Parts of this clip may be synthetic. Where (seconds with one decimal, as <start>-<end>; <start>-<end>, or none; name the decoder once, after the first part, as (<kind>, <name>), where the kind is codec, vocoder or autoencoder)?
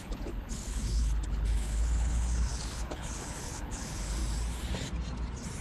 0.0-4.2 (codec, HILCodec)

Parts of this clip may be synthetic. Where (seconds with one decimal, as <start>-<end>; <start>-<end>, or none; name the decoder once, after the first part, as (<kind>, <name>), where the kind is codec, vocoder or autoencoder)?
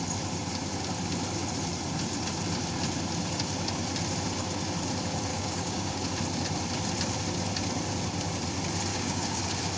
5.3-6.0 (codec, DAC); 8.9-9.4